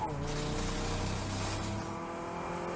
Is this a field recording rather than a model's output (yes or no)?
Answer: yes